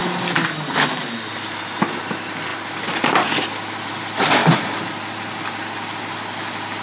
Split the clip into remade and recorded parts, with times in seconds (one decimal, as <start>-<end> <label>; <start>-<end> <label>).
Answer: 0.0-6.8 recorded